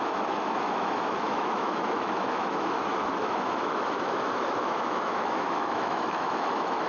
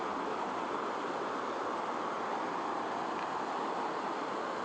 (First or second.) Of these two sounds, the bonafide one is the second